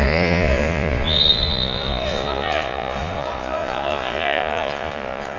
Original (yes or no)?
no